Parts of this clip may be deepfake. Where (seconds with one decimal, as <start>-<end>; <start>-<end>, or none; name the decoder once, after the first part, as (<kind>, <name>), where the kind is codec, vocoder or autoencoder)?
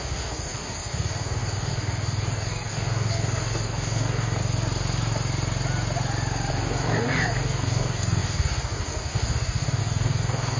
0.0-4.4 (codec, DAC); 6.5-10.6